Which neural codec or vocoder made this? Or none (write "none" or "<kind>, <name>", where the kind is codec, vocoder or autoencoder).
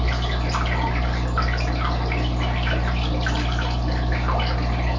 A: none